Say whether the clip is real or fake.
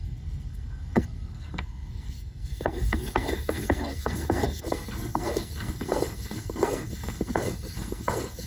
fake